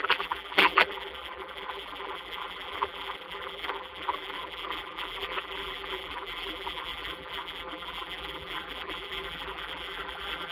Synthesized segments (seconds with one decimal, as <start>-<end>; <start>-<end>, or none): 0.0-10.5